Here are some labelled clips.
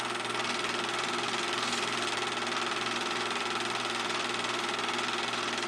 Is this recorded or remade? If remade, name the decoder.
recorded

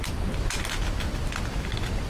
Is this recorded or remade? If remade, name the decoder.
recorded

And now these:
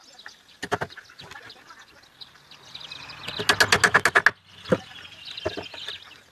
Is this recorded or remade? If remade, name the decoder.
recorded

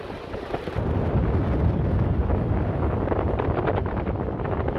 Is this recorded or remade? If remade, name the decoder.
recorded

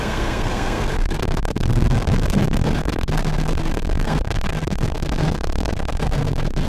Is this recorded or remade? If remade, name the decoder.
remade, codec, SNAC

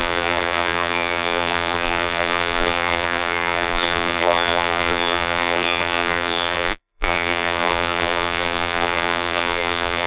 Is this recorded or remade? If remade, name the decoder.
remade, vocoder, BigVGAN v2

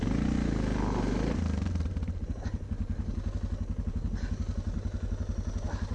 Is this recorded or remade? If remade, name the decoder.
recorded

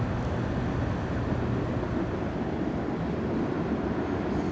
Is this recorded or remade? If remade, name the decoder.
recorded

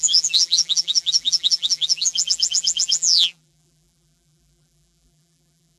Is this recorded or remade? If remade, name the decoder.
remade, vocoder, BigVGAN v2